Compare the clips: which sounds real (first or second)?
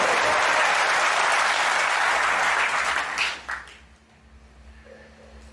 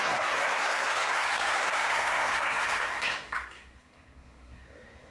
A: first